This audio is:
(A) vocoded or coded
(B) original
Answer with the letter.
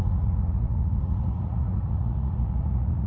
A